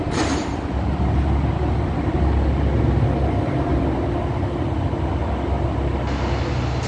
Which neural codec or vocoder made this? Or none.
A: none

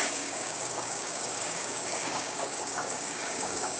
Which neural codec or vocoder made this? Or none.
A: codec, DAC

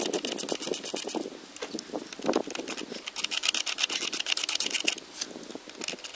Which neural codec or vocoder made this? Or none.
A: none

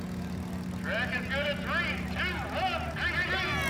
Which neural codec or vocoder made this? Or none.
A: none